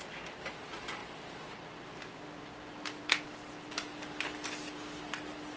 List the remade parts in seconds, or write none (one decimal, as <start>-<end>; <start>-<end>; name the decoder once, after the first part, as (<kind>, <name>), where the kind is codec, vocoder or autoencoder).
none